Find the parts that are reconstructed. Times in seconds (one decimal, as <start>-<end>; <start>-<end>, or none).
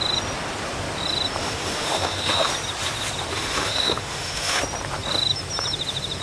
1.4-2.5; 3.3-4.6